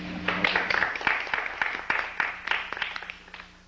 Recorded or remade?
recorded